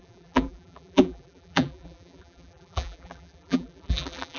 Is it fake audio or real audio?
fake